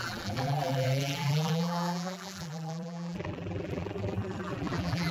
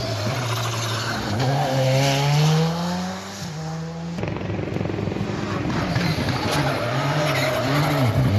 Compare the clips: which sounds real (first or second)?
second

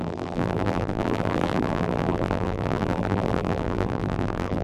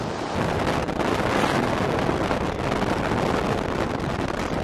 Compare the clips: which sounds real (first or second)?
second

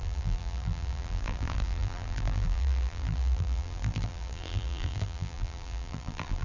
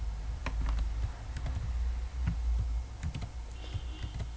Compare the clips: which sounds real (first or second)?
second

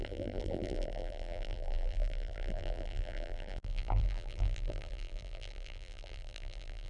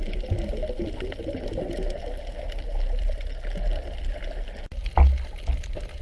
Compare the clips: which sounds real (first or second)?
second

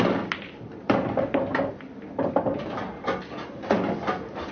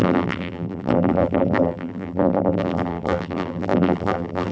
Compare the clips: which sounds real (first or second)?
first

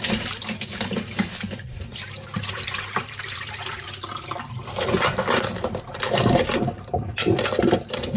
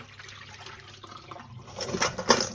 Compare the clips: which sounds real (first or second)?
second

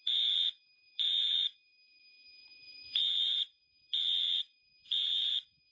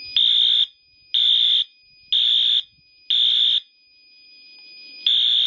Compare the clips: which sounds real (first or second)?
second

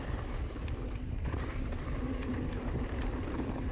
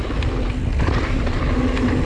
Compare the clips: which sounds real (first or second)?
second